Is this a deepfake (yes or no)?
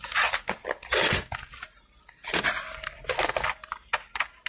no